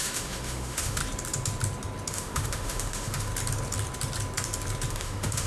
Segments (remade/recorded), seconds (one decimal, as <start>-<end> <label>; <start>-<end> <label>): 0.0-1.0 remade; 1.0-2.1 recorded; 2.1-3.3 remade; 3.3-4.9 recorded; 4.9-5.5 remade

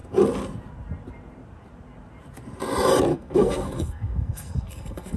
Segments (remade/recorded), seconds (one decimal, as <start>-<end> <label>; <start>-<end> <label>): 0.0-3.1 recorded; 3.1-5.2 remade

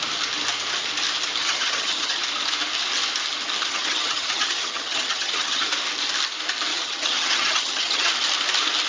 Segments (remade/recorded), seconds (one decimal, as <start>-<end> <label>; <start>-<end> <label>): 0.0-1.4 recorded; 1.4-2.2 remade; 2.2-3.7 recorded; 3.7-5.7 remade; 5.7-6.7 recorded; 6.7-8.1 remade; 8.1-8.9 recorded